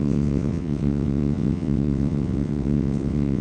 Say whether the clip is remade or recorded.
remade